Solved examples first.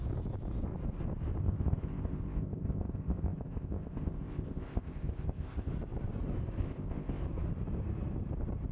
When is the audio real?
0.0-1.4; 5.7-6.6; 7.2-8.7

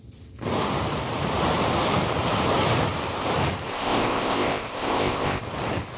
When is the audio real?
0.0-3.7; 5.4-6.0

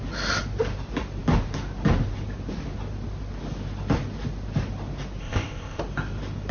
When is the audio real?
0.0-5.2; 5.8-6.5

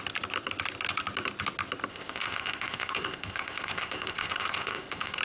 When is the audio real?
0.0-1.9